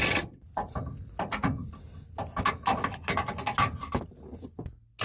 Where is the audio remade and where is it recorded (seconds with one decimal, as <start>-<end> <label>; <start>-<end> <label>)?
0.0-5.0 recorded